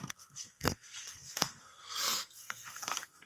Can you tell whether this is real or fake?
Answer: fake